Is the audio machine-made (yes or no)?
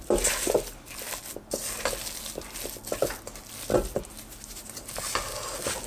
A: no